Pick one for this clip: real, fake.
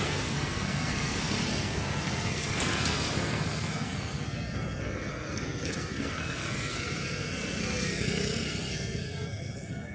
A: fake